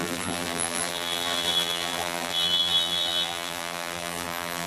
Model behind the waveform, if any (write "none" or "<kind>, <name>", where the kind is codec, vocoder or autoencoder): vocoder, BigVGAN v2